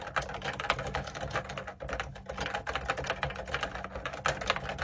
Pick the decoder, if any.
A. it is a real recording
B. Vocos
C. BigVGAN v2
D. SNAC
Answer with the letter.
A